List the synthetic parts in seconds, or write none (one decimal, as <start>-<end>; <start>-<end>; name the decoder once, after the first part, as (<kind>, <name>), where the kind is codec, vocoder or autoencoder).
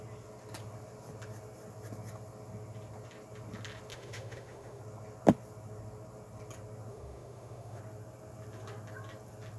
3.9-4.8 (autoencoder, DAC-VAE); 6.9-7.8